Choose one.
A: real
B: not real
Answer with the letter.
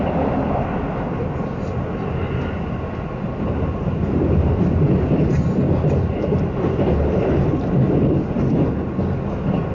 A